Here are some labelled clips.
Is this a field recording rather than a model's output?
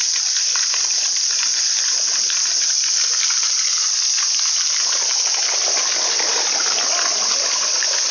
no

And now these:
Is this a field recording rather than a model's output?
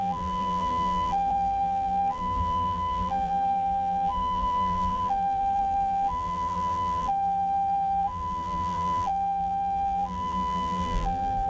no